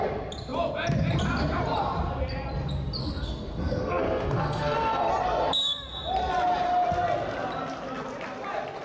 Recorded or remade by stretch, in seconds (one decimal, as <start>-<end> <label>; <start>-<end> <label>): 0.0-3.0 recorded; 3.0-5.1 remade; 5.1-8.8 recorded